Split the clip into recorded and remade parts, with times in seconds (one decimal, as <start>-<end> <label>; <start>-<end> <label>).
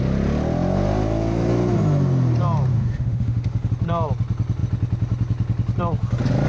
0.0-2.7 recorded; 2.7-3.7 remade; 3.7-6.5 recorded